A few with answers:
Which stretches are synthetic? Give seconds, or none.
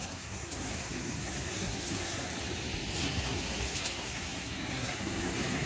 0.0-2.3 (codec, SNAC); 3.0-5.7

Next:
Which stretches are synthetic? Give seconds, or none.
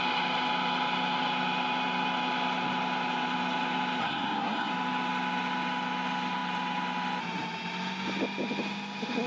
4.0-4.7 (codec, SNAC)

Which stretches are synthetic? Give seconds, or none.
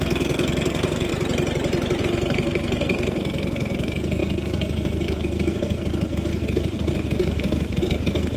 0.0-1.1 (codec, SNAC); 2.0-8.4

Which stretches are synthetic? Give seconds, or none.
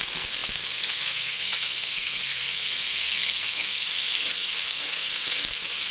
0.0-5.9 (codec, SNAC)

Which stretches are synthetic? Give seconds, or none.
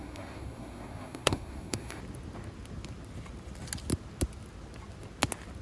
0.0-2.0 (codec, SNAC)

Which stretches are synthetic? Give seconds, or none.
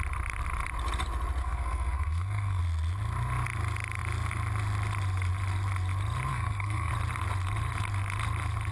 1.4-2.6 (codec, SNAC); 6.3-6.9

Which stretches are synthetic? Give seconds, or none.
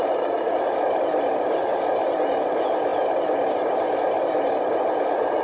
none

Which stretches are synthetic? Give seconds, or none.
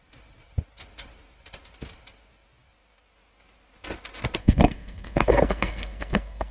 4.4-6.5 (codec, SNAC)